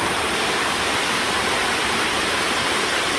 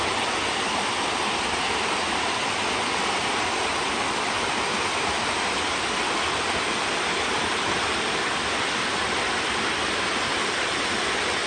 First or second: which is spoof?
first